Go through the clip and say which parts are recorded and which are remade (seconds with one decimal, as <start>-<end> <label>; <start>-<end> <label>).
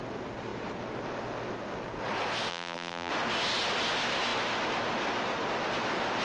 0.0-2.5 recorded; 2.5-3.1 remade; 3.1-6.2 recorded